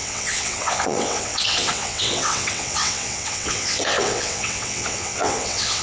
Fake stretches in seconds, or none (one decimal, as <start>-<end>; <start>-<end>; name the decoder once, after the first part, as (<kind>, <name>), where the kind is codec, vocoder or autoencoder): 0.0-5.8 (vocoder, WaveNeXt)